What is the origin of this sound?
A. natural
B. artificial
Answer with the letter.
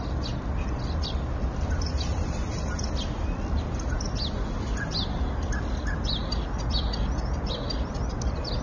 A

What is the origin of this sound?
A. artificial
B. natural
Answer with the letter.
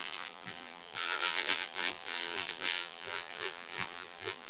A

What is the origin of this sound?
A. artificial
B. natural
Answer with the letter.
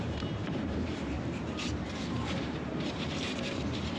A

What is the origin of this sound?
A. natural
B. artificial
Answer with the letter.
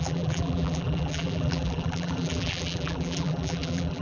B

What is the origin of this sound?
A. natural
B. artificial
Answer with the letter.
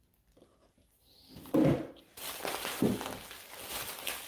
A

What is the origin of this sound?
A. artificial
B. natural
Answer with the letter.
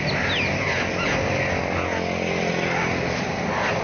B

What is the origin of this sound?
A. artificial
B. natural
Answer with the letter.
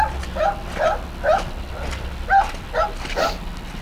B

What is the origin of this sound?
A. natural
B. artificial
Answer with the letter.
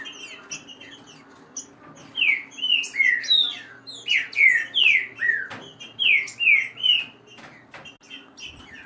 A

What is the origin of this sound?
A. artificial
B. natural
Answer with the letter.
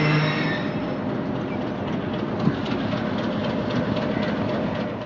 B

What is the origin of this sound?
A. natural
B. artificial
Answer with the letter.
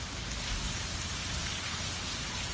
A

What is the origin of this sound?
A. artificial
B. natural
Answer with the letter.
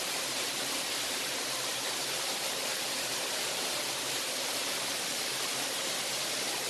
A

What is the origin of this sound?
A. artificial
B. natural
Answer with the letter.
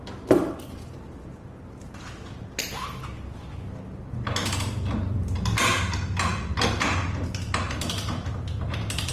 B